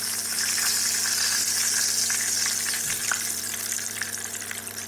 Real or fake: real